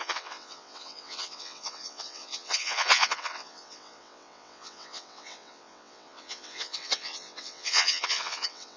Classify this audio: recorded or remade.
remade